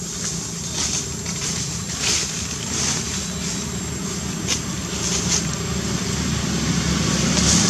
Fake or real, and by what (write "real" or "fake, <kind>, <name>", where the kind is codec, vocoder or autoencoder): real